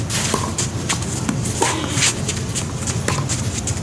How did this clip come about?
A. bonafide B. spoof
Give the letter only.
A